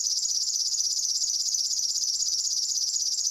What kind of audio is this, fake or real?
real